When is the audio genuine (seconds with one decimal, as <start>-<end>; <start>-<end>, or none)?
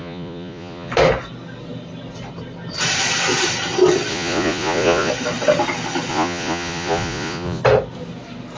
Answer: 0.9-4.1; 5.1-6.1; 7.6-8.6